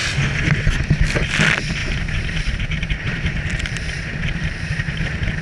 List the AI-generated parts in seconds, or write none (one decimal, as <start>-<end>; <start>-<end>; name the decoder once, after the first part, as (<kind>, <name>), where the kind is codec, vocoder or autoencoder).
1.8-5.0 (vocoder, BigVGAN v2)